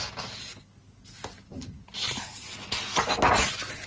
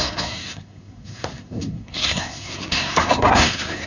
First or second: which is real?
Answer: first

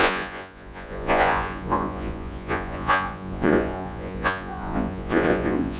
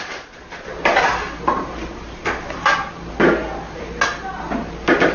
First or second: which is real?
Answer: second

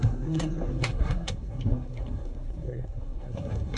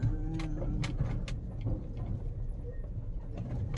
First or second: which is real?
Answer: second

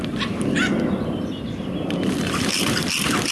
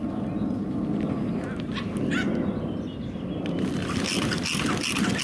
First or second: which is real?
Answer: second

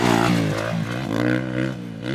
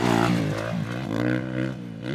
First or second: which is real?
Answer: first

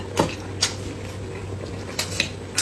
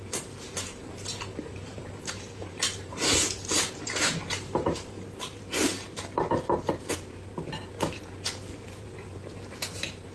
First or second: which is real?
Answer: first